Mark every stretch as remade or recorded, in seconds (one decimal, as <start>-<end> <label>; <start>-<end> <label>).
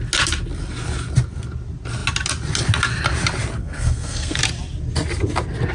0.0-3.6 recorded; 3.6-4.4 remade; 4.4-5.7 recorded